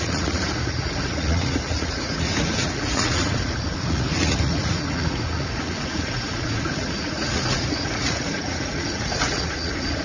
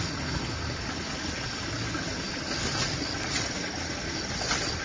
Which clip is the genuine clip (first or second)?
second